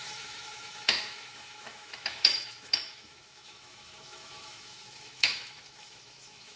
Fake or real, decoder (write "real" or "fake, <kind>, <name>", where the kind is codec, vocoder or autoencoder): fake, autoencoder, DAC-VAE